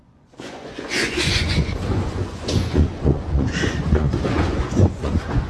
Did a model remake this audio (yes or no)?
yes